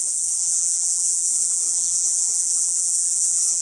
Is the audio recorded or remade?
remade